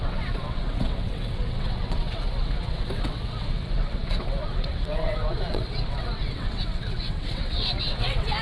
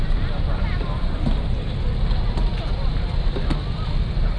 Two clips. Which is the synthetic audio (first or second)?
first